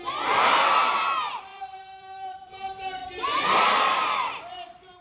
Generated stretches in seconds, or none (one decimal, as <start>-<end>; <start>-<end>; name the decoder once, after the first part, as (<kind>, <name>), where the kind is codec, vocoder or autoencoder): 1.5-2.5 (vocoder, BigVGAN v2); 3.0-5.0